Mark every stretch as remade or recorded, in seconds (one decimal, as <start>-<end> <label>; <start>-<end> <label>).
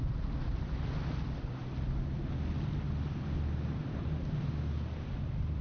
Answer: 0.0-5.6 recorded